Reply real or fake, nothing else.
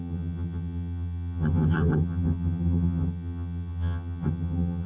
fake